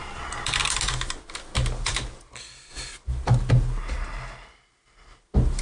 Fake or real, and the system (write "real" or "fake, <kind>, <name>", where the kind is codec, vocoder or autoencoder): real